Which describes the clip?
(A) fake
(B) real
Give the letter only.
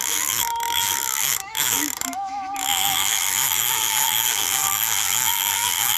A